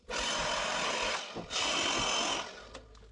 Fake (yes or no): no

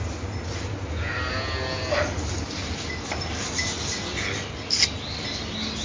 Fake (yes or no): no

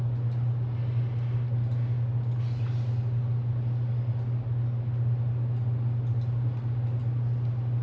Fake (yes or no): no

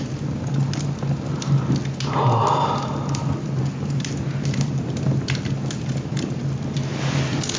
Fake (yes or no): no